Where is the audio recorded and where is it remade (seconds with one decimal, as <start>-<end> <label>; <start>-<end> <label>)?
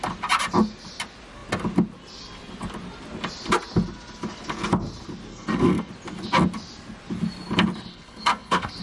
0.0-5.3 recorded; 5.3-5.9 remade; 5.9-7.9 recorded; 7.9-8.8 remade